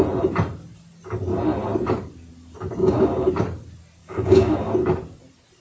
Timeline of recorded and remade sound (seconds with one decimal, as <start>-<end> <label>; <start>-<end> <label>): 0.0-2.8 recorded; 2.8-3.3 remade; 3.3-4.0 recorded; 4.0-4.7 remade; 4.7-5.6 recorded